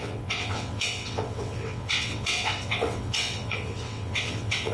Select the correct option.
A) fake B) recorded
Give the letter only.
A